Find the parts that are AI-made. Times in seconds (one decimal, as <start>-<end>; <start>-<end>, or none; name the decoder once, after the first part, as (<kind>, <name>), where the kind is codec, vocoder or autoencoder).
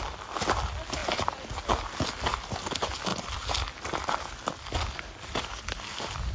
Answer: none